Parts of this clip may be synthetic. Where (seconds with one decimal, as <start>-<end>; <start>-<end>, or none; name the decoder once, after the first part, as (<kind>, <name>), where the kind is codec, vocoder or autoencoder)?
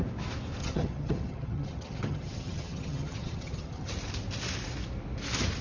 0.6-3.9 (vocoder, HiFi-GAN)